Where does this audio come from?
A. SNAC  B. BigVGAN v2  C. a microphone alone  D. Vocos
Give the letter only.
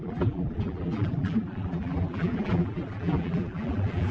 B